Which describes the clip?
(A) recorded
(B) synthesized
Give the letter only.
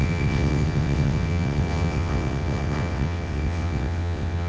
B